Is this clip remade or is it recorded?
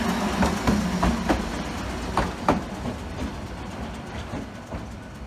recorded